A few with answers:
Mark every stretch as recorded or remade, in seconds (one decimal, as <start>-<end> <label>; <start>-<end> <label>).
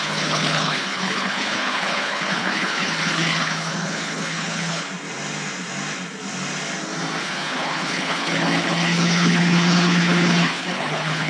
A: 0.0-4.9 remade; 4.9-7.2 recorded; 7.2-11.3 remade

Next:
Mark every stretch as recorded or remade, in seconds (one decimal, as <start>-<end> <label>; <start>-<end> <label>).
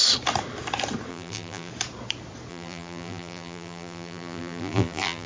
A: 0.0-1.1 recorded; 1.1-1.7 remade; 1.7-2.5 recorded; 2.5-5.3 remade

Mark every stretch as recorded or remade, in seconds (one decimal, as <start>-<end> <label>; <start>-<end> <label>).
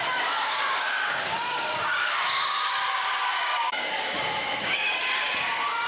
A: 0.0-5.9 remade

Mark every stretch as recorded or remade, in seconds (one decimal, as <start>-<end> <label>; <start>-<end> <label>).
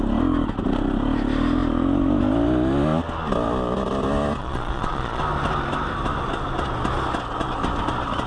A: 0.0-4.4 recorded; 4.4-5.2 remade; 5.2-8.3 recorded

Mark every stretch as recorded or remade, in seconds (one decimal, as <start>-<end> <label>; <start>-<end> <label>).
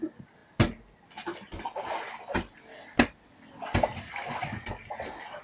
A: 0.0-5.4 recorded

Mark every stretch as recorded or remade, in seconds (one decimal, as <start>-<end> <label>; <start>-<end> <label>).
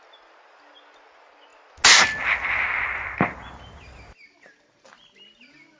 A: 0.0-5.8 recorded